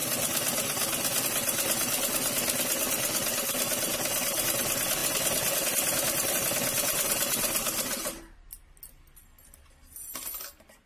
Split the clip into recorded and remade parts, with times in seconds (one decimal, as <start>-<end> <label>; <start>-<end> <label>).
0.0-10.9 recorded